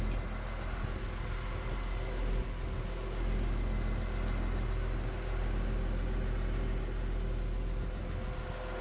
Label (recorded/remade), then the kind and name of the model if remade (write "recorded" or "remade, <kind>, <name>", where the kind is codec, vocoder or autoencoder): recorded